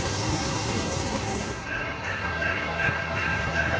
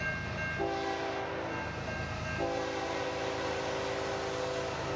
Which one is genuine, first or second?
second